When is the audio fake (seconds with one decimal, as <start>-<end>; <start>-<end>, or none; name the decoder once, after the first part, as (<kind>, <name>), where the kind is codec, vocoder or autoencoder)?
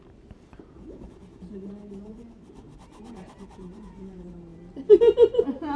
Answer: 0.0-4.5 (vocoder, BigVGAN v2)